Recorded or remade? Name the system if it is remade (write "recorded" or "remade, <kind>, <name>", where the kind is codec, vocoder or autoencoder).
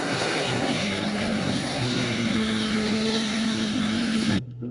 remade, codec, SNAC